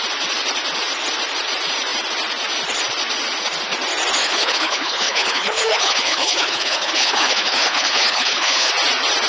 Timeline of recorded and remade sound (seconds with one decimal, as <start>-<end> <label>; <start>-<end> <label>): 0.0-4.2 recorded; 4.2-8.7 remade; 8.7-9.3 recorded